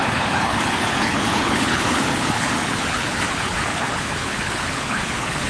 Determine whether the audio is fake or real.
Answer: fake